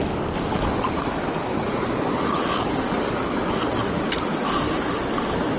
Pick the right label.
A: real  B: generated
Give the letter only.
A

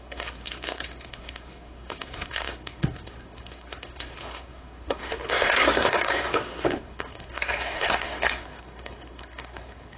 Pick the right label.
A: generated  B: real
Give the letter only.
A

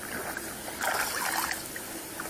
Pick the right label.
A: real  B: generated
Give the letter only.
A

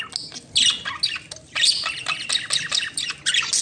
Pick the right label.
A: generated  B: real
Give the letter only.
B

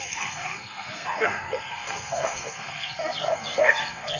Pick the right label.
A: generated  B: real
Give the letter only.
A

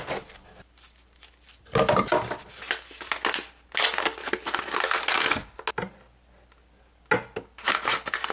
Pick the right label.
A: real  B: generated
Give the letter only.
A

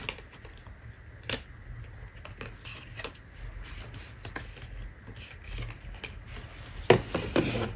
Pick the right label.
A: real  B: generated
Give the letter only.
A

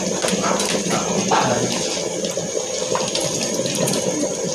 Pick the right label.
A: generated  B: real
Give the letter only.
B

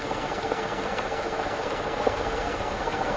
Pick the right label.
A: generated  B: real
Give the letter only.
A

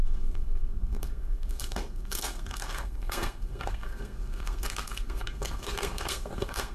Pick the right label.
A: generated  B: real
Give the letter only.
A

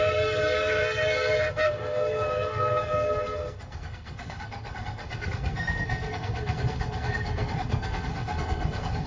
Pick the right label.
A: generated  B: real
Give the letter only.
A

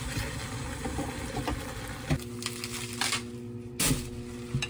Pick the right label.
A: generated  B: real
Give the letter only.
B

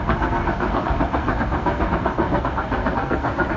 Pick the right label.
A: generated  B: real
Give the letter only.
A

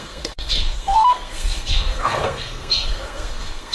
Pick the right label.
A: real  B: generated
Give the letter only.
B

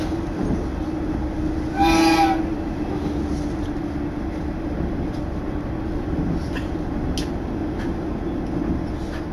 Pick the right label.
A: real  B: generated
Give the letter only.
A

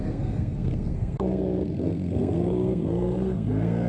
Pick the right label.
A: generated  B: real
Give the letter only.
A